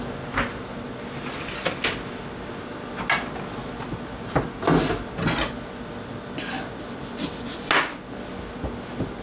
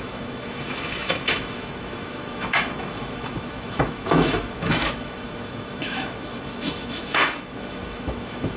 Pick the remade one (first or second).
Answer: second